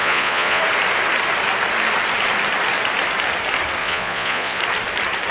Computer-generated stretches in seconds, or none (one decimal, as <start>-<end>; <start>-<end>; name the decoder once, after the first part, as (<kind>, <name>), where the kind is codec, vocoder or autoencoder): 0.0-0.6 (vocoder, Vocos); 3.8-4.6